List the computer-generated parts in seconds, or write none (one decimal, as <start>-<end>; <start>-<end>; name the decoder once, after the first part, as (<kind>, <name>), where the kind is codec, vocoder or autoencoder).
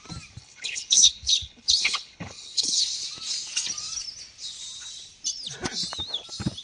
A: 0.4-2.8 (codec, HILCodec)